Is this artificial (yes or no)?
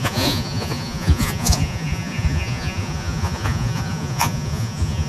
yes